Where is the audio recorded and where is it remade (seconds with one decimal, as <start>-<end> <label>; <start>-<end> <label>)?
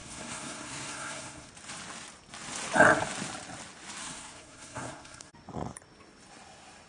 0.0-1.5 remade; 1.5-4.0 recorded; 4.0-5.3 remade; 5.3-6.9 recorded